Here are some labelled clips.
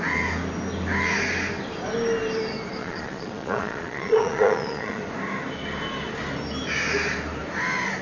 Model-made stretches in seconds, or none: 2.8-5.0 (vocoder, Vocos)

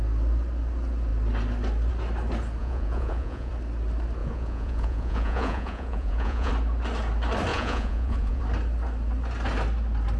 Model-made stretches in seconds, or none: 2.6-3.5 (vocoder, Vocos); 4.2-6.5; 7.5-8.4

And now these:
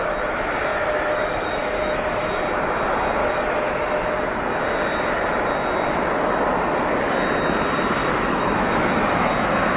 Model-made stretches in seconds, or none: 0.7-2.3 (autoencoder, DAC-VAE); 3.2-4.1; 8.0-9.3